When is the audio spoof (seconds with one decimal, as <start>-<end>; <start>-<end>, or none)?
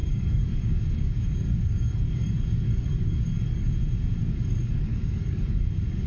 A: 0.0-3.7; 4.2-5.6